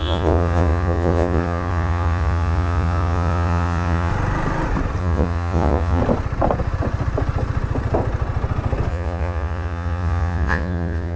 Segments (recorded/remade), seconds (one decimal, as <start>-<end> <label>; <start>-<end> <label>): 0.0-4.1 remade; 4.1-5.0 recorded; 5.0-6.0 remade; 6.0-8.9 recorded; 8.9-11.2 remade